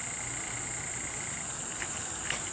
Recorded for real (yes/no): yes